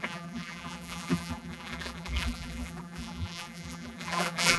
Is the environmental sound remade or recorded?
remade